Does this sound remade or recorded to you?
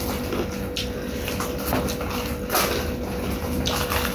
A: recorded